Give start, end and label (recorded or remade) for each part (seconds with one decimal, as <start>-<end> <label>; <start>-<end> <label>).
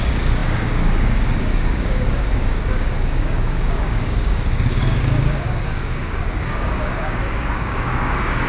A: 0.0-8.5 remade